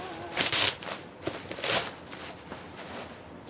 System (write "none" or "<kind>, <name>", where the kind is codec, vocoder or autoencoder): vocoder, BigVGAN v2